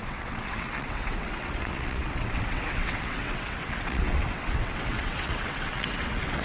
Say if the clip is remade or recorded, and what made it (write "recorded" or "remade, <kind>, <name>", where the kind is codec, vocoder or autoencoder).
remade, vocoder, WaveNeXt